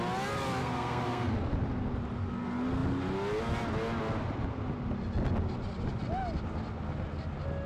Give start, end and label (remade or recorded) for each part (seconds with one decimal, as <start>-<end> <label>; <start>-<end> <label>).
0.0-0.6 recorded; 0.6-1.3 remade; 1.3-7.7 recorded